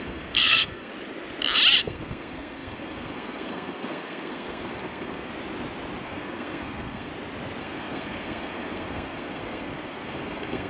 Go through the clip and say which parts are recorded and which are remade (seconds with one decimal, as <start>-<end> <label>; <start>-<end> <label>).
0.0-0.9 remade; 0.9-1.8 recorded; 1.8-5.3 remade; 5.3-6.0 recorded; 6.0-7.1 remade; 7.1-7.6 recorded; 7.6-10.7 remade